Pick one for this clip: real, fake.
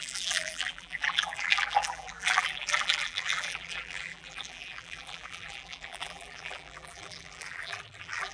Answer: fake